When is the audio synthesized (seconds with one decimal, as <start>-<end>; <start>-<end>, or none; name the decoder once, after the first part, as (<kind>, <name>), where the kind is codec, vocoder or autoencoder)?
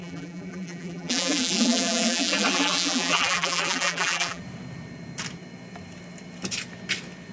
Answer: 0.0-4.4 (vocoder, BigVGAN v2)